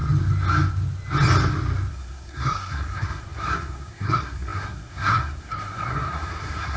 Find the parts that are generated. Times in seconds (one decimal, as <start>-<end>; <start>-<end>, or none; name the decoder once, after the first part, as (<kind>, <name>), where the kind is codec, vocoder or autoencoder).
1.9-6.8 (codec, SNAC)